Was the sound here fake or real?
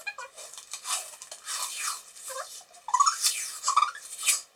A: real